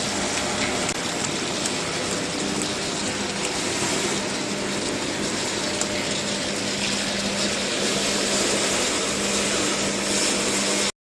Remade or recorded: recorded